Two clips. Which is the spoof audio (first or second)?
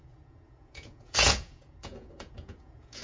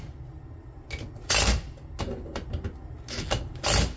first